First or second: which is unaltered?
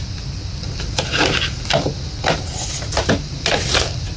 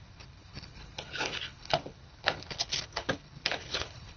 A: first